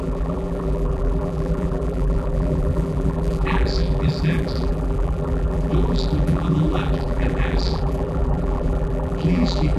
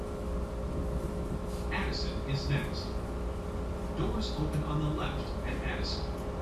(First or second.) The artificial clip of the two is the first